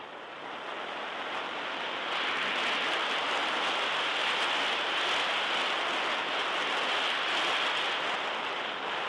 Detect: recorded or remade recorded